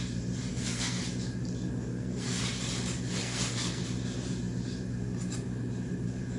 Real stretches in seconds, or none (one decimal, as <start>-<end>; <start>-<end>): 0.0-0.5; 1.0-1.9; 2.4-3.2; 3.8-6.4